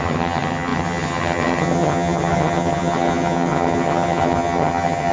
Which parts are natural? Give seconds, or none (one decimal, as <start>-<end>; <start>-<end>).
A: none